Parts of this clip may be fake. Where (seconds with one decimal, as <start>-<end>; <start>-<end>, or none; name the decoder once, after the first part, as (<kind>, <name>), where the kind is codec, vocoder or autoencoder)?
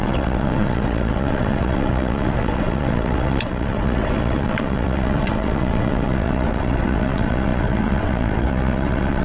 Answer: 0.0-9.2 (vocoder, WaveNeXt)